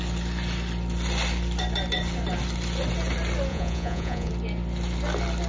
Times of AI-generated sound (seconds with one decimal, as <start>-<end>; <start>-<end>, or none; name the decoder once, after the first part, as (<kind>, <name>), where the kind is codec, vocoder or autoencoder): 3.5-4.3 (vocoder, Vocos)